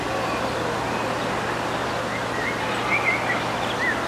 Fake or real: real